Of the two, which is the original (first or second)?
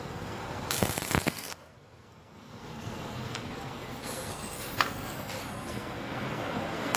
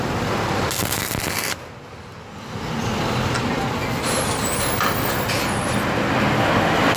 second